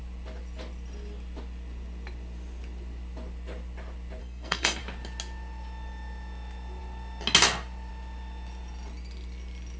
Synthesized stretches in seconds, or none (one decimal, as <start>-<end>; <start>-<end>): 4.2-4.8